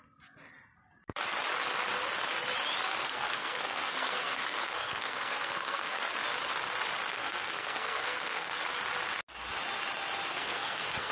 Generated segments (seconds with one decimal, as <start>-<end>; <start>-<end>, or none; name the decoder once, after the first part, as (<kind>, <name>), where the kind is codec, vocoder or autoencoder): 3.0-6.0 (codec, SNAC); 7.1-8.6; 10.3-11.1